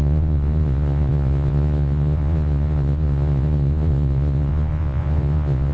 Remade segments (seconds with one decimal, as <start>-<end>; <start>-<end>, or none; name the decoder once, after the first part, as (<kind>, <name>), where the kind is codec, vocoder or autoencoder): 0.0-5.7 (vocoder, Vocos)